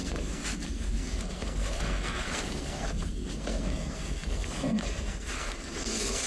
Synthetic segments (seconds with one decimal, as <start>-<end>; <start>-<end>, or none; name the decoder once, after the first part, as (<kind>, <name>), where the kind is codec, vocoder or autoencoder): 0.0-6.3 (codec, SNAC)